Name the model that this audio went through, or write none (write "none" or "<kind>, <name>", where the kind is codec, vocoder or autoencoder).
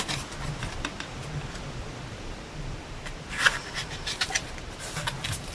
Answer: none